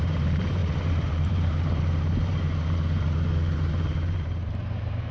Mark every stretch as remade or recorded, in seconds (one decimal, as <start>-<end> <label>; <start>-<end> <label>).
0.0-5.1 remade